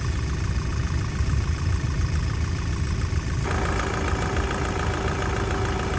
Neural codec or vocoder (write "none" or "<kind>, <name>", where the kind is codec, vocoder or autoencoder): none